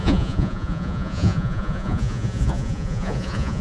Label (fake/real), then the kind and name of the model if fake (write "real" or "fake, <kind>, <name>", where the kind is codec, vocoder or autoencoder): fake, vocoder, Vocos